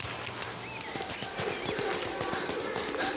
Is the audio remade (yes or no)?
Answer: no